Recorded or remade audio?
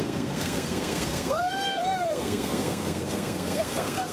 remade